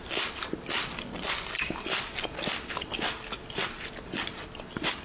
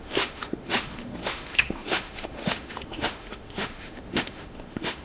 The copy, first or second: second